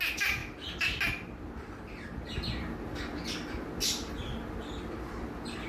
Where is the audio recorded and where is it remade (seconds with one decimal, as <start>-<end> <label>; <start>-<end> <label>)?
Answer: 0.0-5.7 recorded